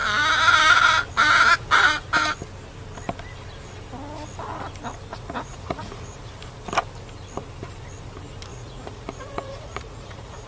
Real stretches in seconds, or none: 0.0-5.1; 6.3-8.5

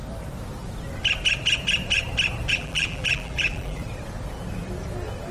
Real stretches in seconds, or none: 0.0-2.5; 3.8-5.3

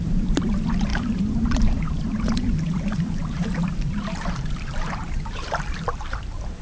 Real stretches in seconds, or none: none

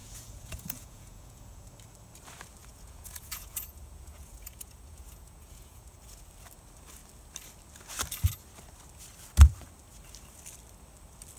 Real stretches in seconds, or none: 1.7-2.6; 6.3-11.4